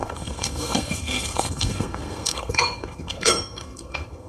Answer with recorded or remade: remade